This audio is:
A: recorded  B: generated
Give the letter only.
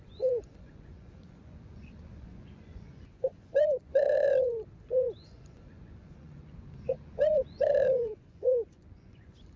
B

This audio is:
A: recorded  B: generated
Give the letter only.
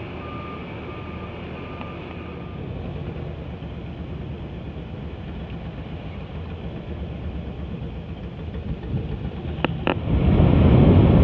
A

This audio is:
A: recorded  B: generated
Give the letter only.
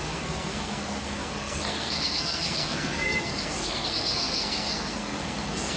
B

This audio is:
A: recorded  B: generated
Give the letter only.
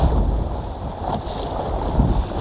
A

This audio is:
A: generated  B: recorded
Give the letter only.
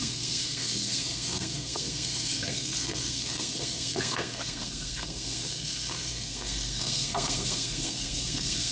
A